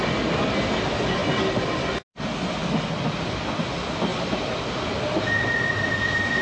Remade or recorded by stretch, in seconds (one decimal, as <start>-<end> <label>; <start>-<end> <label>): 0.0-6.4 recorded

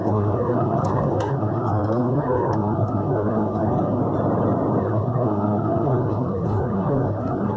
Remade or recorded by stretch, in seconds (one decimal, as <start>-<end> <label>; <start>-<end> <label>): 0.0-4.0 remade; 4.0-4.8 recorded; 4.8-7.6 remade

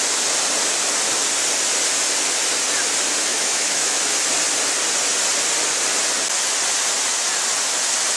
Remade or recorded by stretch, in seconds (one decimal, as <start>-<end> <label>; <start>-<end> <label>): 0.0-3.3 recorded; 3.3-4.0 remade; 4.0-8.2 recorded

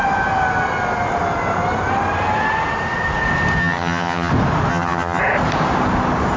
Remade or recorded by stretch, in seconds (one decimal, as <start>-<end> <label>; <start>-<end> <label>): 0.0-3.6 recorded; 3.6-4.3 remade; 4.3-4.7 recorded; 4.7-5.2 remade; 5.2-6.4 recorded

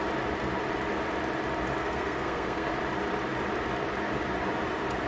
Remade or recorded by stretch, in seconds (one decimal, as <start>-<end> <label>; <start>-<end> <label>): 0.0-1.8 recorded; 1.8-2.7 remade; 2.7-5.1 recorded